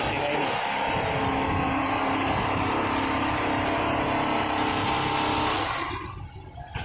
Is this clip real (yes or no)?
yes